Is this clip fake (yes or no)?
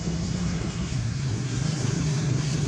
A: yes